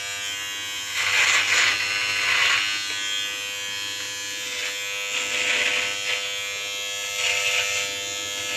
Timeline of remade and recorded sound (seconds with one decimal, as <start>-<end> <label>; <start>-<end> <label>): 0.0-8.6 recorded